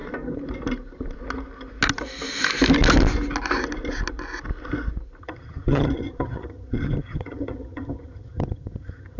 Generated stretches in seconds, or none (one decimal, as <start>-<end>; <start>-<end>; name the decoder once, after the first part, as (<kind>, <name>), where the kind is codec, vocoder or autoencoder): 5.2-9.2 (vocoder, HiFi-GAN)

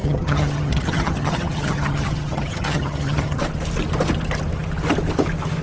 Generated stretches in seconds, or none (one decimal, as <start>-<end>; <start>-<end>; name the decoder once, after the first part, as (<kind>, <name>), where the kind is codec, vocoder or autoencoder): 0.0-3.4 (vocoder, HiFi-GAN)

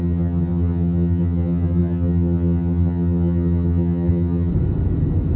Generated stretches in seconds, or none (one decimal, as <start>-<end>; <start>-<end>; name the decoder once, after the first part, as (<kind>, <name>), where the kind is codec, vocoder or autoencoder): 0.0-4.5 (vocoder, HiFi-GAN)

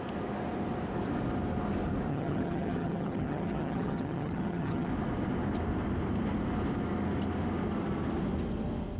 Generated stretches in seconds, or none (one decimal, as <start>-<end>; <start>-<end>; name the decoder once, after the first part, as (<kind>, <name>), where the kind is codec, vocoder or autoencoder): 2.1-4.9 (vocoder, HiFi-GAN)

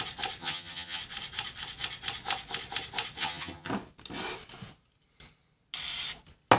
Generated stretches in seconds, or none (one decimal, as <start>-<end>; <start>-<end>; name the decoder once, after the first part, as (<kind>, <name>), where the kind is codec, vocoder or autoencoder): 0.4-1.0 (vocoder, HiFi-GAN); 3.2-3.7